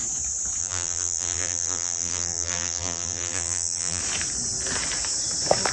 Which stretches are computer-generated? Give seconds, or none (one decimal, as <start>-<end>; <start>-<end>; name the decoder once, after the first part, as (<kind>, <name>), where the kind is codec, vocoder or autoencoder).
0.6-4.0 (vocoder, BigVGAN v2)

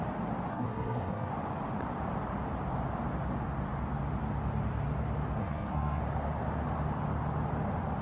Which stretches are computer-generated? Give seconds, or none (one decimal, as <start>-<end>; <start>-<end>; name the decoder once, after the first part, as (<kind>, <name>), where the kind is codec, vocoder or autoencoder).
0.5-1.3 (codec, SNAC); 5.4-6.0

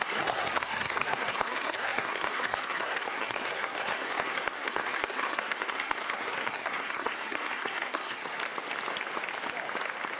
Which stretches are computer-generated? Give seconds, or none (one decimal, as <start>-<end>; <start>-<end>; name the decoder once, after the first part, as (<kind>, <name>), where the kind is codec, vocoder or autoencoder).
0.0-8.4 (codec, SNAC)

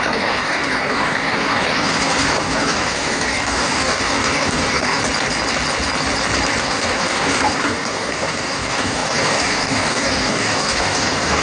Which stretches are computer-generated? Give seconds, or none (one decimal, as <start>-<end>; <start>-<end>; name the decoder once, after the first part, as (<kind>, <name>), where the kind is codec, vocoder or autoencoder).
0.0-5.0 (codec, DAC); 6.6-11.4